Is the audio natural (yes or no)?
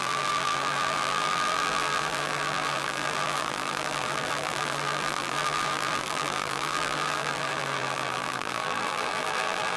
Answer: no